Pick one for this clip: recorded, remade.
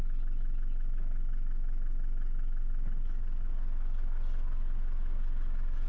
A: recorded